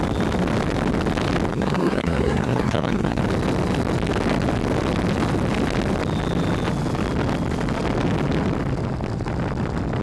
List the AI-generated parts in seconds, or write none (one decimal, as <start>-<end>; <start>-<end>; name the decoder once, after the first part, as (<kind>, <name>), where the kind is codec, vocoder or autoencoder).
1.5-3.2 (codec, SNAC)